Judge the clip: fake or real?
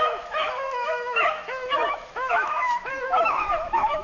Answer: fake